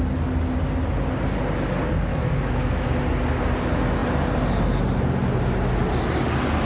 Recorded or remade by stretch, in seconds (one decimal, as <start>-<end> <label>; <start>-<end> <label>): 0.0-2.1 recorded; 2.1-2.9 remade; 2.9-6.6 recorded